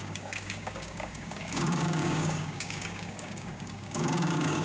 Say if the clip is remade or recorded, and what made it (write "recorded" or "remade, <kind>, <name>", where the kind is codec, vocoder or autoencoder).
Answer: remade, codec, DAC